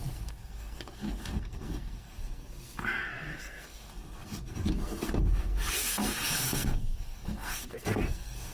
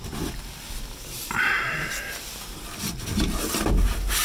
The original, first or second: second